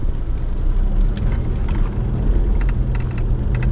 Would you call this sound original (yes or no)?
yes